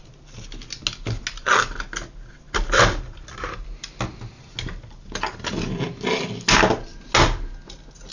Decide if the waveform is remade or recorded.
recorded